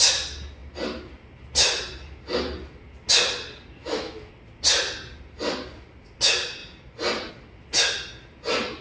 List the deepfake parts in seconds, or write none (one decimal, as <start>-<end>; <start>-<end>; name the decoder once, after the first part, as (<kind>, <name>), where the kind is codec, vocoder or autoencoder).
3.8-4.3 (autoencoder, DAC-VAE)